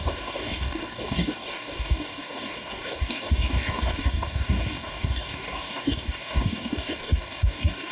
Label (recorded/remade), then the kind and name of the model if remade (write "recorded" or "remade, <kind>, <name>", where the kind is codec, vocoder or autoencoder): remade, codec, DAC